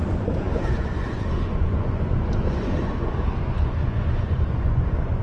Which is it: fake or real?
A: fake